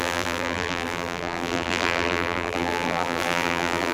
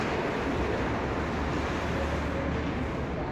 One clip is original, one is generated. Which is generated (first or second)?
first